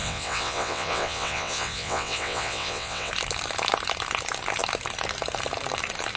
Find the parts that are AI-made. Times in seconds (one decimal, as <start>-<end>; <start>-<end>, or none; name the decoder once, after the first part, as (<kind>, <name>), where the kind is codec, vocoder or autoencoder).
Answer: 0.0-3.1 (vocoder, WaveNeXt)